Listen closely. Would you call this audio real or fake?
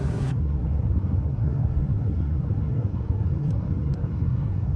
fake